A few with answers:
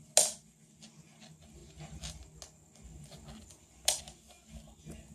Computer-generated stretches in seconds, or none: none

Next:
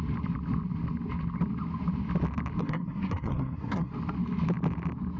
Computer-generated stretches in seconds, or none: 2.6-3.9 (codec, SNAC)